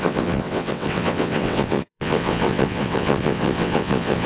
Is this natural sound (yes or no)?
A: no